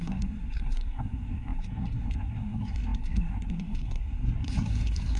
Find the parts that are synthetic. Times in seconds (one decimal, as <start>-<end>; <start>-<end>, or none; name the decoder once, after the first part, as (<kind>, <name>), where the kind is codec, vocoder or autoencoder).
0.0-5.2 (codec, SNAC)